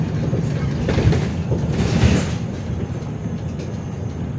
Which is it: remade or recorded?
recorded